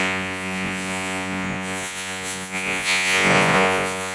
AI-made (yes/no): yes